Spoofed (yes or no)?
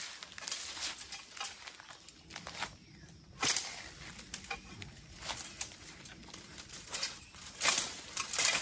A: no